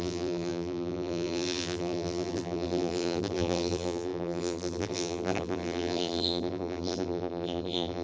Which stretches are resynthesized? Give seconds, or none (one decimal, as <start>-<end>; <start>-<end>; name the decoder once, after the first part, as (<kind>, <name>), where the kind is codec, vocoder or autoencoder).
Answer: 0.0-8.0 (vocoder, BigVGAN v2)